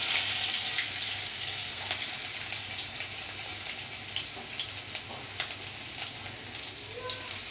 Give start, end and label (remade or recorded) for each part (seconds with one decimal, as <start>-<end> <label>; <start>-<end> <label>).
0.0-1.3 recorded; 1.3-1.8 remade; 1.8-7.5 recorded